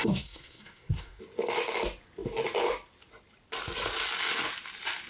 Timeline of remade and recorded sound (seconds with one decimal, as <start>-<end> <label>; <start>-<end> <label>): 0.0-1.2 remade; 1.2-5.1 recorded

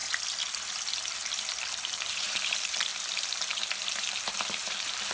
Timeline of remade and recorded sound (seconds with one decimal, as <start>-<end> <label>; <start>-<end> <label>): 0.0-1.7 recorded; 1.7-5.1 remade

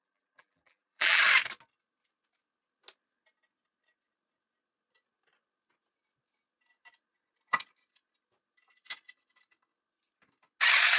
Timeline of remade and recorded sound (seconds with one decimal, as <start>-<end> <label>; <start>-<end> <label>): 0.0-1.2 remade; 1.2-11.0 recorded

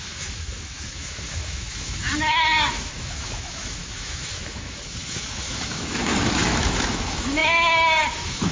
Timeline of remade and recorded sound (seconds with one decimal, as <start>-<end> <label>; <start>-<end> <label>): 0.0-8.5 remade

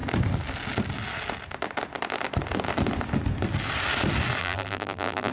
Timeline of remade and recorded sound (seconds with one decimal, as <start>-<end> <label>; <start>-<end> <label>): 0.0-4.4 recorded; 4.4-5.3 remade

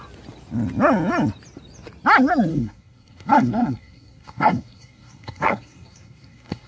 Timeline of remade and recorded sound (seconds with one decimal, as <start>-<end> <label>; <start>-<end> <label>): 0.0-2.5 recorded; 2.5-6.7 remade

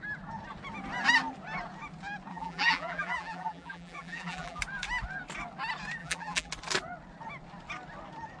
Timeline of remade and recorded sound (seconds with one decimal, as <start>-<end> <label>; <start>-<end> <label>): 0.0-2.3 recorded; 2.3-4.6 remade; 4.6-6.0 recorded; 6.0-6.5 remade; 6.5-8.4 recorded

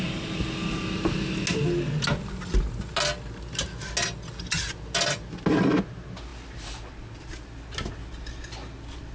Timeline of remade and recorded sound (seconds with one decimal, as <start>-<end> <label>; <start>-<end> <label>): 0.0-9.1 recorded